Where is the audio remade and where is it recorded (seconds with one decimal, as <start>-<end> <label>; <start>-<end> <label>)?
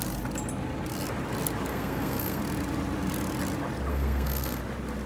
0.0-1.7 recorded; 1.7-2.4 remade; 2.4-3.9 recorded; 3.9-4.6 remade; 4.6-5.1 recorded